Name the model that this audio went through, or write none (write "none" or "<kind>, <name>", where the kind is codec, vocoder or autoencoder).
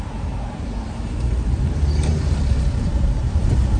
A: vocoder, BigVGAN v2